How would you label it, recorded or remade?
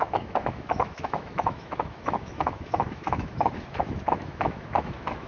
remade